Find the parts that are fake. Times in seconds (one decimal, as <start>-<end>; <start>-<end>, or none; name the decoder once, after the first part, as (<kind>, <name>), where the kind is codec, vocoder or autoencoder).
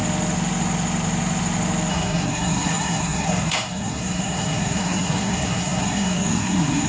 1.9-6.9 (codec, SNAC)